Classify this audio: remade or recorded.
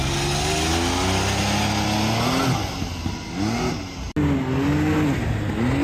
recorded